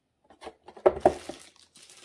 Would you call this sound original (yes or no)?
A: yes